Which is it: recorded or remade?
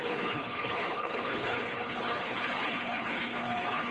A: remade